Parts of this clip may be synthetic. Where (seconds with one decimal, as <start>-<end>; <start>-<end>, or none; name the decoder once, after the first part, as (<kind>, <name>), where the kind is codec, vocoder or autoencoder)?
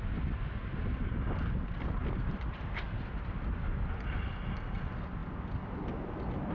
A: 2.0-2.6 (vocoder, BigVGAN v2)